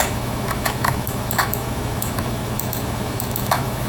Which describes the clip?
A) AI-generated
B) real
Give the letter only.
A